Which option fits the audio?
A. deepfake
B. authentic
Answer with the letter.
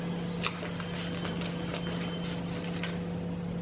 B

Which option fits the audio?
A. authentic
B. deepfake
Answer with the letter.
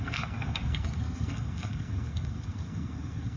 B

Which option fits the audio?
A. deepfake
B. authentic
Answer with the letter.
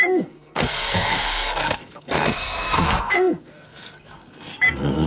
A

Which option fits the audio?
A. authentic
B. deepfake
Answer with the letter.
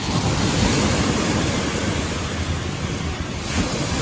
A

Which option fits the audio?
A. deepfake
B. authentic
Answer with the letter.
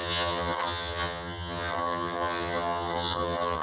A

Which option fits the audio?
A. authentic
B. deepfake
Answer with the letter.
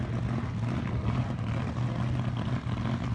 A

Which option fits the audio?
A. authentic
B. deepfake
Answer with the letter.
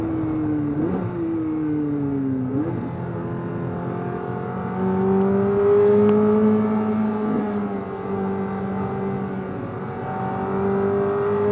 A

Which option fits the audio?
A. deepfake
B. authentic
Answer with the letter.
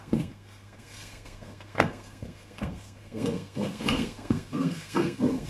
A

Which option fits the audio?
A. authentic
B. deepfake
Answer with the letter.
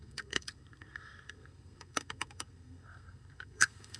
B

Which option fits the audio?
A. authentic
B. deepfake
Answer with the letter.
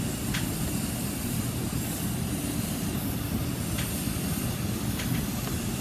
A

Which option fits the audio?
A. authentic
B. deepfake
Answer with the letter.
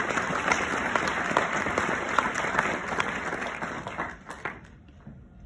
A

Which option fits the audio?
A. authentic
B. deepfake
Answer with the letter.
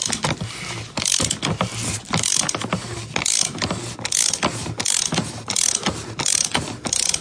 A